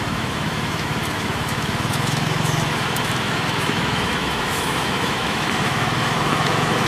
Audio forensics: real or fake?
fake